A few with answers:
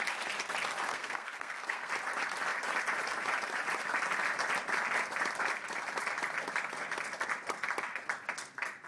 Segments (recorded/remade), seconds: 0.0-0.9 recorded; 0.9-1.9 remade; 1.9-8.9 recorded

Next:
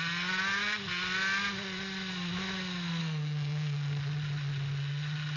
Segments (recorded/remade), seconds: 0.0-3.0 recorded; 3.0-4.0 remade; 4.0-5.4 recorded